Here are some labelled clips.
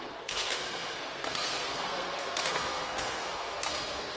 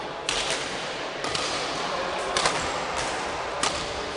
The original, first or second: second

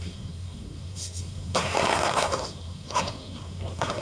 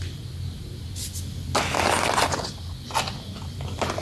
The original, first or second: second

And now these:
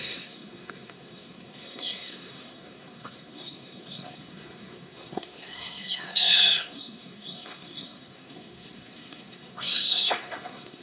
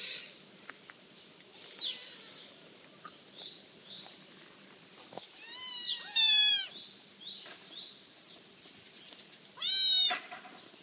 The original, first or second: second